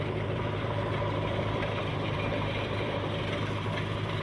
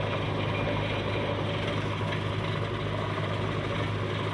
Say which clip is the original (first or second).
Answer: second